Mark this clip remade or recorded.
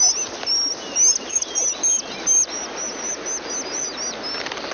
recorded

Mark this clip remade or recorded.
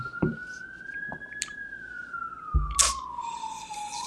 recorded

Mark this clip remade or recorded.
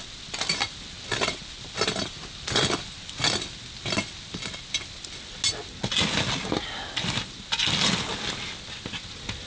recorded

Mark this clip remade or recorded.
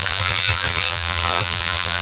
remade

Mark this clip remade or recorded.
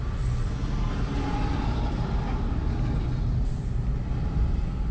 recorded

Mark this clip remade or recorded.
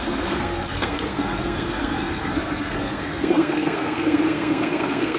remade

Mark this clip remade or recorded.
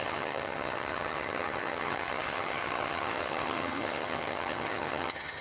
remade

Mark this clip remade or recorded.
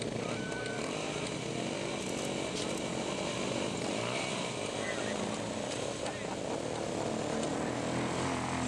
recorded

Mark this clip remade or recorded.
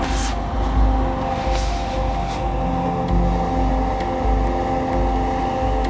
recorded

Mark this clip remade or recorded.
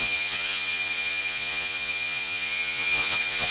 remade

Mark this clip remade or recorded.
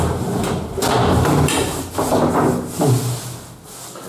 recorded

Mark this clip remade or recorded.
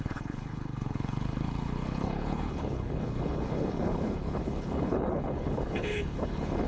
remade